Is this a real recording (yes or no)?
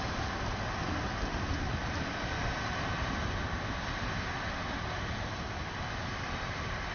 yes